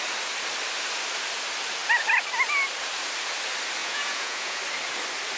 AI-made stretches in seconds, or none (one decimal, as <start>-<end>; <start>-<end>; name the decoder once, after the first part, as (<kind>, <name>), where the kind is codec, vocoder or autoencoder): 3.8-4.6 (vocoder, Vocos)